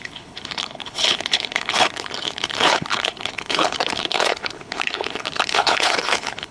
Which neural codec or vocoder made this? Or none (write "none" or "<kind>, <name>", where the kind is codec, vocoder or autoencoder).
codec, HILCodec